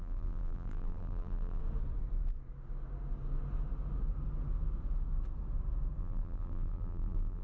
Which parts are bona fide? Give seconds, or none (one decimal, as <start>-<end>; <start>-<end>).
1.6-6.0